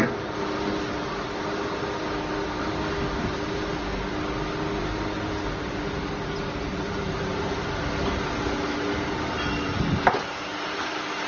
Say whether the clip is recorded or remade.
recorded